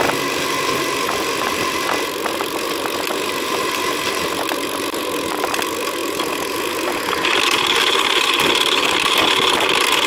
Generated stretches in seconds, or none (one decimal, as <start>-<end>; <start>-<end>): none

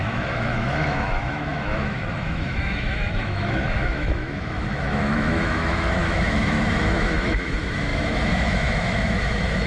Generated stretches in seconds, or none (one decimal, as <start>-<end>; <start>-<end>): 0.0-9.7

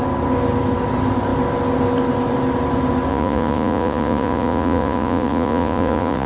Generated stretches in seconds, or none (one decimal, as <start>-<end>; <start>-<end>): 3.1-6.3